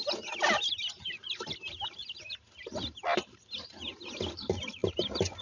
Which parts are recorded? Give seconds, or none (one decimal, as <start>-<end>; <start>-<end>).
0.0-5.4